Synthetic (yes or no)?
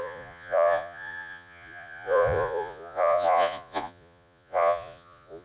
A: yes